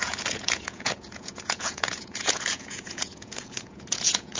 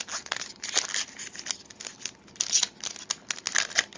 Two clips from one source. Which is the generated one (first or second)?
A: first